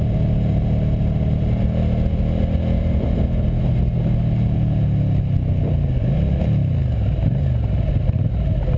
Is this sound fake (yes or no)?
no